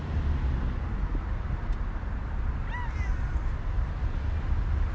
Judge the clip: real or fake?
real